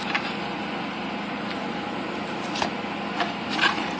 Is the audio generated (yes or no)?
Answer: no